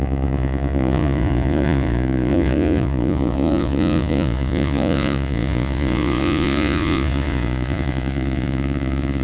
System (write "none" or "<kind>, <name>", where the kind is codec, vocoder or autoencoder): vocoder, Vocos